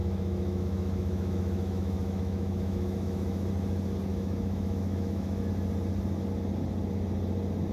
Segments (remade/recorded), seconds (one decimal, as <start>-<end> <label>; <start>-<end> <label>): 0.0-3.5 remade; 3.5-4.1 recorded; 4.1-5.5 remade; 5.5-7.7 recorded

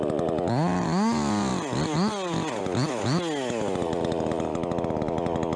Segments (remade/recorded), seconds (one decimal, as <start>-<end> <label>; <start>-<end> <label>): 0.0-5.6 recorded

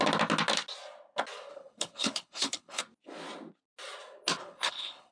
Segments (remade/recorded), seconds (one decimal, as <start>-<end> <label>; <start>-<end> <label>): 0.0-1.5 recorded; 1.5-2.8 remade; 2.8-4.4 recorded; 4.4-5.1 remade

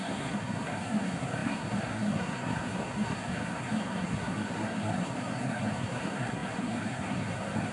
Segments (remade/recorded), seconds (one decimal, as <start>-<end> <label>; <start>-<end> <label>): 0.0-7.7 remade

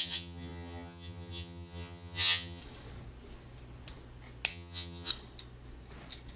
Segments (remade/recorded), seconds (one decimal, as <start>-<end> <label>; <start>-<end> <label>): 0.0-2.6 remade; 2.6-4.5 recorded; 4.5-5.1 remade; 5.1-6.4 recorded